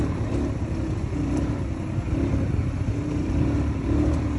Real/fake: real